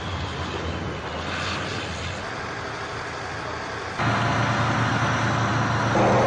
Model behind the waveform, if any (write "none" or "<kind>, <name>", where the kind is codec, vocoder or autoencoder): none